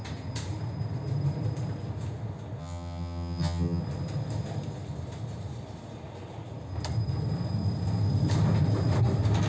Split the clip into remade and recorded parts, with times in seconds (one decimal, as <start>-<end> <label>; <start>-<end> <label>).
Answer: 0.0-2.6 recorded; 2.6-3.8 remade; 3.8-9.5 recorded